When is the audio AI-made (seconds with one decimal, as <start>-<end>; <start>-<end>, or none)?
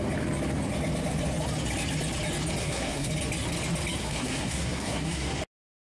2.6-3.1; 4.0-5.4